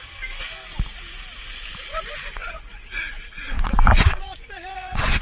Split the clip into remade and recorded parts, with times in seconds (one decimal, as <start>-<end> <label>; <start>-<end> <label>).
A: 0.0-1.9 recorded; 1.9-5.2 remade